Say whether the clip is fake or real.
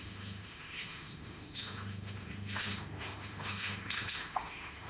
fake